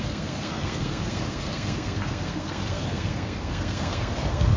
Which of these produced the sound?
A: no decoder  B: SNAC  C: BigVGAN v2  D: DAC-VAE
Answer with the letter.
B